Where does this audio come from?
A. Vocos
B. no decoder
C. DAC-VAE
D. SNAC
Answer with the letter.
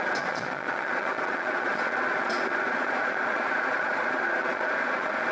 A